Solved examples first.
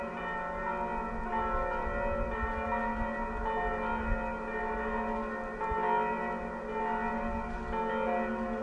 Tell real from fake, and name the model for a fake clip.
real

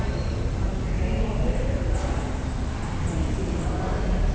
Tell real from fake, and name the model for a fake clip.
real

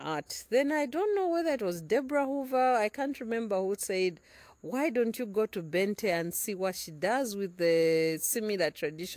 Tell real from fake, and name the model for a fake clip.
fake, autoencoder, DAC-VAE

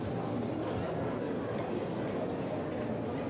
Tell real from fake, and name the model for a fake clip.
real